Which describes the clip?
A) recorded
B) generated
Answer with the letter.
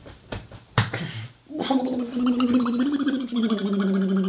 B